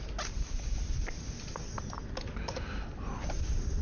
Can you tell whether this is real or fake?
real